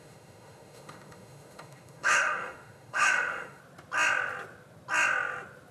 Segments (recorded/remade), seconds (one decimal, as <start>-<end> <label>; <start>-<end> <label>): 0.0-3.6 remade; 3.6-5.7 recorded

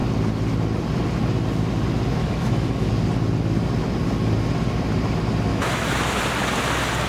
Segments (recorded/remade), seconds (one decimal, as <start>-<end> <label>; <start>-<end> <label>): 0.0-2.2 recorded; 2.2-2.9 remade; 2.9-5.5 recorded; 5.5-6.2 remade; 6.2-7.1 recorded

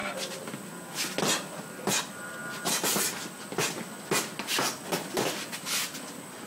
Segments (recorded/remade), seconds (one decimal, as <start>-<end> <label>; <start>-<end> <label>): 0.0-6.5 recorded